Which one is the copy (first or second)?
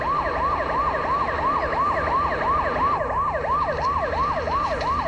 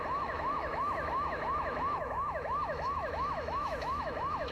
second